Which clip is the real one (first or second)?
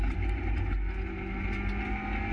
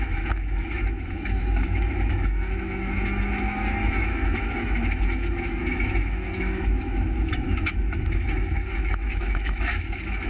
first